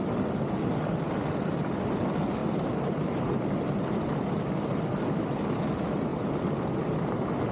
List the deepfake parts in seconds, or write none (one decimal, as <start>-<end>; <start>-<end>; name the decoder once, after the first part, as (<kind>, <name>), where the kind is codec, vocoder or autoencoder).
2.4-3.5 (vocoder, BigVGAN v2); 6.1-7.1